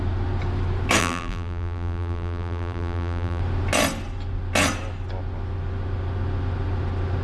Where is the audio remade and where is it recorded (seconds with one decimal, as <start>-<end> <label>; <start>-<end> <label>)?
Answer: 0.0-1.0 recorded; 1.0-3.4 remade; 3.4-7.2 recorded